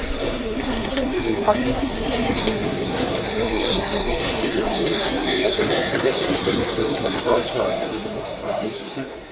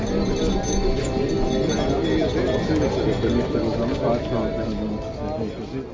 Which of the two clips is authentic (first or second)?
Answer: second